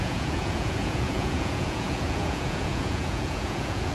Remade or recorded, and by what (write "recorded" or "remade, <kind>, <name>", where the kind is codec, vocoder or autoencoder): remade, vocoder, Vocos